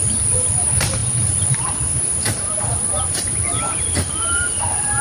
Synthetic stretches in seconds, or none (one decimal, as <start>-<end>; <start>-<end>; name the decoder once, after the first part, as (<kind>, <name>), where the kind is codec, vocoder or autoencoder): 0.0-5.0 (vocoder, BigVGAN v2)